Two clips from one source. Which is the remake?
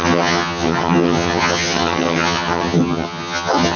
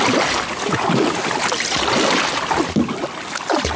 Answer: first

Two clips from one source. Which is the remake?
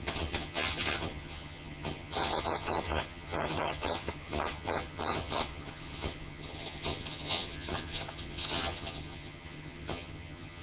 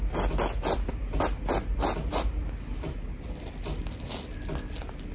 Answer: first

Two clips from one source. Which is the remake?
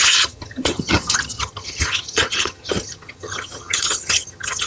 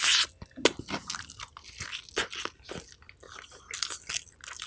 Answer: first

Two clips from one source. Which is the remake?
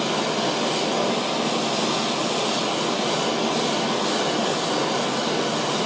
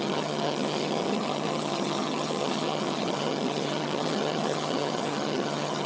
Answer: second